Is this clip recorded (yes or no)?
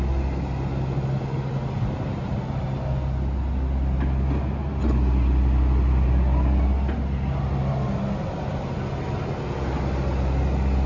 yes